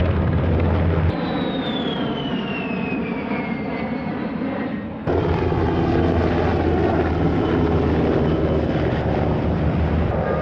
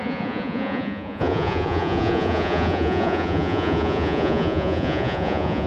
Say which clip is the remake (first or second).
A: second